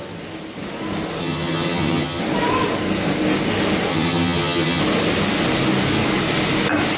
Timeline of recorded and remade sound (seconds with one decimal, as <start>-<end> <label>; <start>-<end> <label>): 0.0-1.2 recorded; 1.2-2.2 remade; 2.2-3.9 recorded; 3.9-4.8 remade; 4.8-7.0 recorded